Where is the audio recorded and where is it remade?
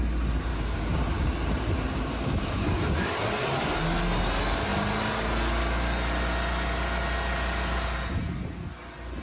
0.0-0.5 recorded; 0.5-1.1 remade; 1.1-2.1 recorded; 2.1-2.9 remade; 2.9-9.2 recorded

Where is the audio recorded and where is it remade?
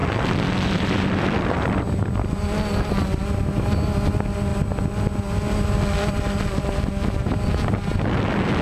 0.0-8.6 recorded